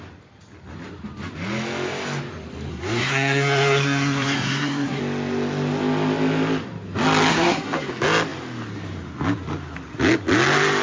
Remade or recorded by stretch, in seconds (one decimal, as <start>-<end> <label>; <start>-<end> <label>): 0.0-2.7 recorded; 2.7-5.0 remade; 5.0-7.3 recorded; 7.3-7.9 remade; 7.9-10.8 recorded